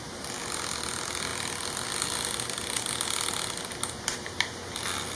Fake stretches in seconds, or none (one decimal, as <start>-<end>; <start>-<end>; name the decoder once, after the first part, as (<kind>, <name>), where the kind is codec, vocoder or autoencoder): none